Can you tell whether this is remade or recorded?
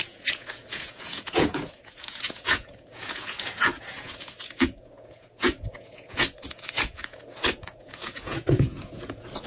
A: remade